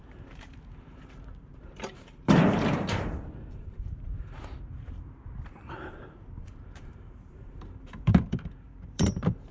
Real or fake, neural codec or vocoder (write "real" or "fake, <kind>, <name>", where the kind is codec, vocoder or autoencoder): fake, vocoder, BigVGAN v2